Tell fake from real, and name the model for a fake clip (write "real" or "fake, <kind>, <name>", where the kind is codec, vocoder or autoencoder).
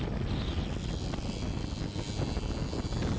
real